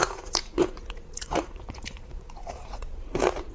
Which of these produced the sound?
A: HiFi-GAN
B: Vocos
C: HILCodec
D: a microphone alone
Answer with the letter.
B